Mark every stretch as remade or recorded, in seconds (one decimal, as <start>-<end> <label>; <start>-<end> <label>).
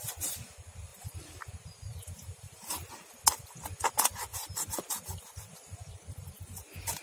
0.0-0.9 recorded; 0.9-2.9 remade; 2.9-4.3 recorded; 4.3-6.4 remade; 6.4-7.0 recorded